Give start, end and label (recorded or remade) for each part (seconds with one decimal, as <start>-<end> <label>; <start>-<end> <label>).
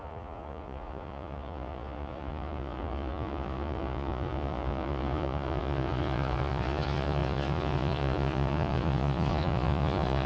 0.0-10.3 remade